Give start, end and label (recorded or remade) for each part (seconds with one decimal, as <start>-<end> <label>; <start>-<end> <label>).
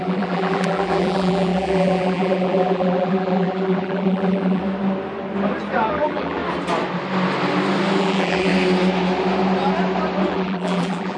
0.0-4.6 remade; 4.6-5.9 recorded; 5.9-6.4 remade; 6.4-8.0 recorded; 8.0-8.5 remade; 8.5-10.3 recorded; 10.3-11.2 remade